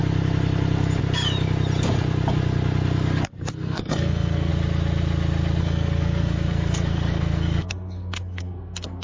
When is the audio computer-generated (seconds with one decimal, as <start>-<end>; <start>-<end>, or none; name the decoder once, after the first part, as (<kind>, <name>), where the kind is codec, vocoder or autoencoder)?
3.5-4.5 (codec, SNAC); 5.6-9.0